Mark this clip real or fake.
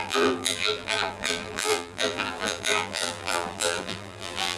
fake